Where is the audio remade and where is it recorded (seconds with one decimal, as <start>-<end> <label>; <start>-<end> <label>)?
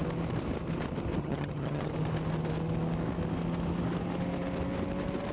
0.0-1.2 recorded; 1.2-1.9 remade; 1.9-5.3 recorded